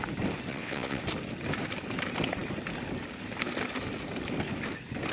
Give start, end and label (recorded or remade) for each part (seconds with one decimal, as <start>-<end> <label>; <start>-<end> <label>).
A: 0.0-0.5 recorded; 0.5-1.0 remade; 1.0-5.1 recorded